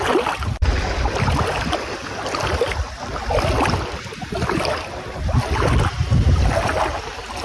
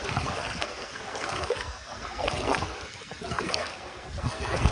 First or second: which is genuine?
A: first